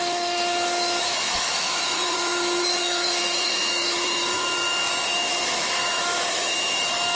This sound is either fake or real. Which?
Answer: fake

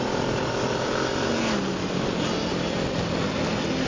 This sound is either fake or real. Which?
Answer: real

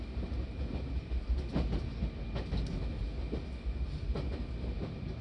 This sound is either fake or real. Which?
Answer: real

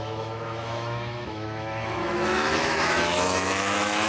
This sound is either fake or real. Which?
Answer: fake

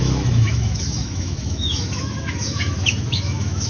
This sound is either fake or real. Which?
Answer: fake